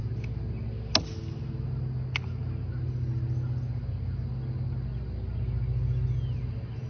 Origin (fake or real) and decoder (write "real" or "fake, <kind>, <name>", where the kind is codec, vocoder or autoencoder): real